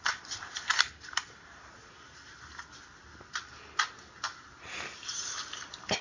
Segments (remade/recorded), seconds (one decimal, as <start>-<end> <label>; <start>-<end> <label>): 0.0-0.7 recorded; 0.7-1.3 remade; 1.3-6.0 recorded